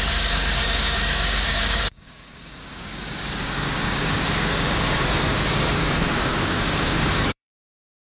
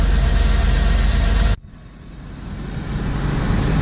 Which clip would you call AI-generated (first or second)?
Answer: first